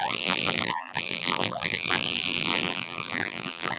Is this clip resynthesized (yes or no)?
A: yes